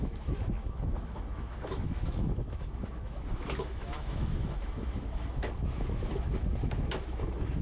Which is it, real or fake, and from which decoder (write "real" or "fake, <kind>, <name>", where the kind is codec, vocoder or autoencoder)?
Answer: fake, autoencoder, DAC-VAE